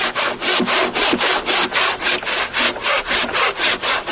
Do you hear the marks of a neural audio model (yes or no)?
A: no